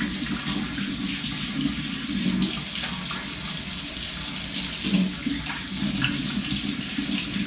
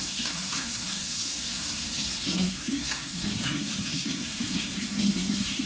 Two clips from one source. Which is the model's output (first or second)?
second